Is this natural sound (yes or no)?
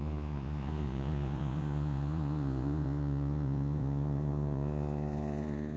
no